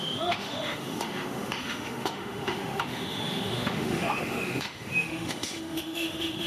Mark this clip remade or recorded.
remade